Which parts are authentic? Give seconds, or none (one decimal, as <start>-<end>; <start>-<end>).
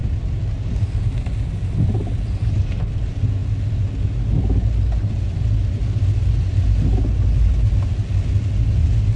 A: 0.0-9.2